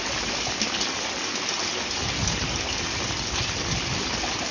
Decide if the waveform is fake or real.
real